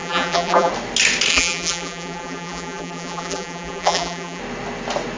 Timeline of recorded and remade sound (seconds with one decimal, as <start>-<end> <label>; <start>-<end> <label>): 0.0-0.7 remade; 0.7-1.3 recorded; 1.3-4.4 remade; 4.4-5.2 recorded